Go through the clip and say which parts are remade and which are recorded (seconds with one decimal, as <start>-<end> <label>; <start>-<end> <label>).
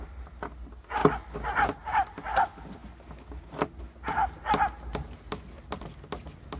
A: 0.0-6.6 recorded